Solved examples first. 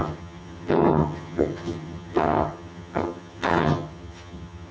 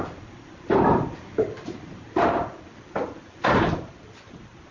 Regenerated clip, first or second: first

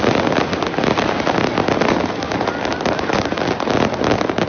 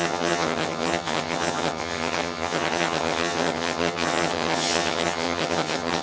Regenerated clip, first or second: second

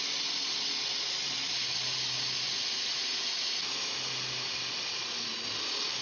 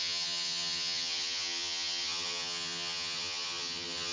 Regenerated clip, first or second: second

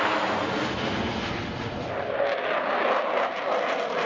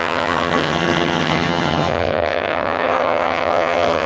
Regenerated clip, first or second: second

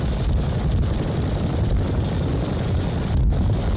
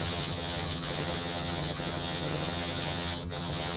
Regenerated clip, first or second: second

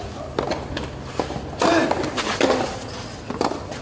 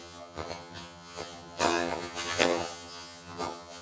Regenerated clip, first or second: second